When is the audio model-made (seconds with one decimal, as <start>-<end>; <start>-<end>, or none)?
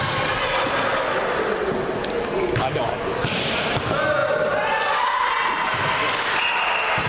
none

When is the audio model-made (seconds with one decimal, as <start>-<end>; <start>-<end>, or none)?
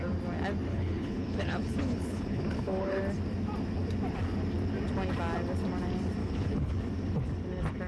0.7-3.0; 6.2-6.8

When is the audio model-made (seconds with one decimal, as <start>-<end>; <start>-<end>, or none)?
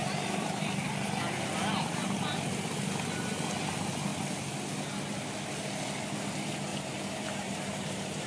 0.0-0.9; 6.7-8.3